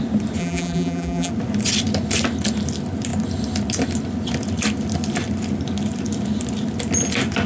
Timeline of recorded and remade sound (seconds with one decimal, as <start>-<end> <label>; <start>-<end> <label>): 0.0-0.4 recorded; 0.4-1.3 remade; 1.3-7.5 recorded